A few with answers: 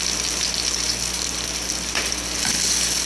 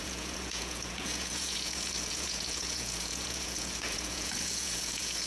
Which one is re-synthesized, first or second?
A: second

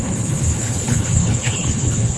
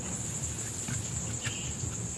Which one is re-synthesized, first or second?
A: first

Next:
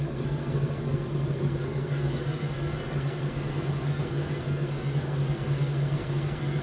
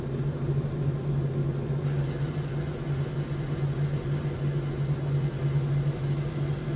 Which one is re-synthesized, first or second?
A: first